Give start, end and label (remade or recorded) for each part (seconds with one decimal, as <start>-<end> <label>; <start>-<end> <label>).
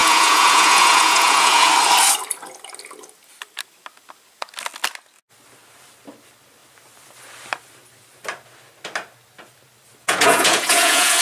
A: 0.0-1.7 remade; 1.7-10.0 recorded; 10.0-11.2 remade